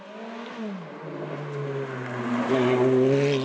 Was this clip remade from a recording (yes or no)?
no